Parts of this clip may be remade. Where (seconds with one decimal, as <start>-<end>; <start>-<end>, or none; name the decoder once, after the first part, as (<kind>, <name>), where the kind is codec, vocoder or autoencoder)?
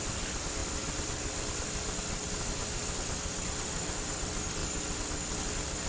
none